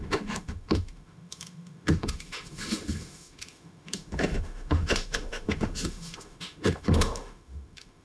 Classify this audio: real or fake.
fake